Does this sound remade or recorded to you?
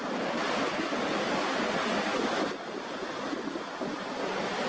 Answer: recorded